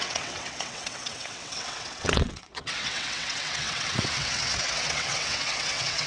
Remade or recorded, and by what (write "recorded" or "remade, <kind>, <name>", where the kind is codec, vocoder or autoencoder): remade, vocoder, WaveNeXt